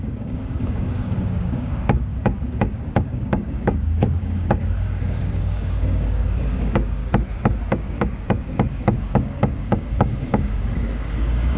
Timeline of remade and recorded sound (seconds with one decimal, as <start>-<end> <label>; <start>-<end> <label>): 0.0-7.0 remade; 7.0-7.7 recorded; 7.7-11.6 remade